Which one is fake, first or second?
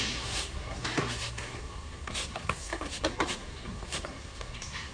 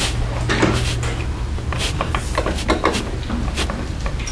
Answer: first